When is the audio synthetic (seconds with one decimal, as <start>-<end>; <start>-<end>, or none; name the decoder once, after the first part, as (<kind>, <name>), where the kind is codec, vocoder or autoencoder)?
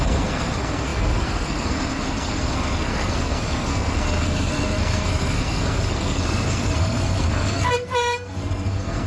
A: 0.0-9.1 (codec, SNAC)